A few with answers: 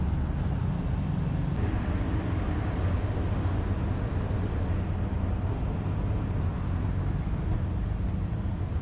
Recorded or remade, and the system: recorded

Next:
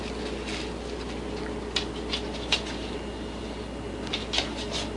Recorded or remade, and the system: recorded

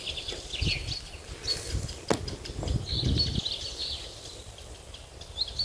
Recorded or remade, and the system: recorded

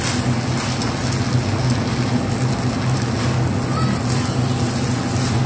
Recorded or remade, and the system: recorded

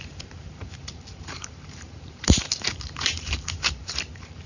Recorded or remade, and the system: remade, vocoder, BigVGAN v2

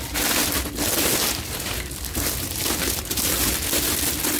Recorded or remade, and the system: recorded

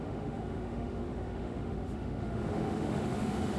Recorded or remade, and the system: remade, autoencoder, DAC-VAE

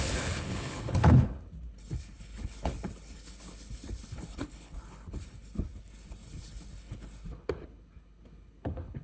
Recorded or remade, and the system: remade, codec, HILCodec